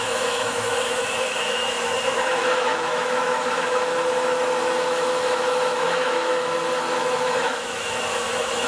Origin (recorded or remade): remade